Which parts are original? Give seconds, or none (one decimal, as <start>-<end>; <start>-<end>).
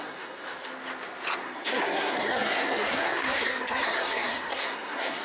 0.7-1.4